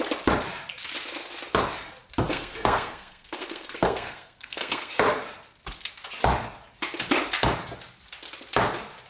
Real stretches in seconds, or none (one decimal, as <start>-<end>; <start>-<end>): 0.0-2.3; 4.9-9.1